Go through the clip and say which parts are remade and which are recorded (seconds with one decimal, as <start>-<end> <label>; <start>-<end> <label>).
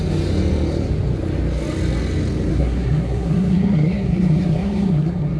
0.0-2.5 recorded; 2.5-5.4 remade